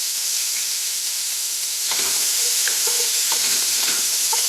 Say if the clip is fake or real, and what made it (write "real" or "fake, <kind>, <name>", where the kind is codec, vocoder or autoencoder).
fake, autoencoder, DAC-VAE